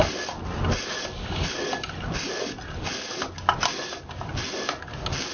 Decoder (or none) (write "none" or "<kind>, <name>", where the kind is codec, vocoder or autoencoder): none